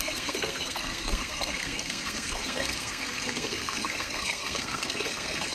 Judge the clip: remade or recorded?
remade